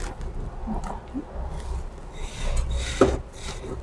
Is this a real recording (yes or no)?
yes